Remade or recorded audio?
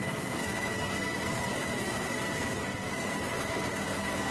remade